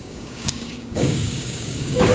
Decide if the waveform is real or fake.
fake